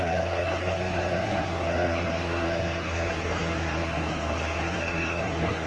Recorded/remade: remade